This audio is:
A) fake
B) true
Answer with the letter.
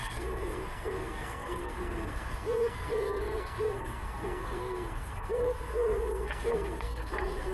A